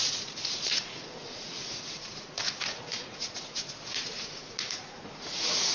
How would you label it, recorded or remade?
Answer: remade